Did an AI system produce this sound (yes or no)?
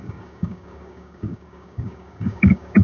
yes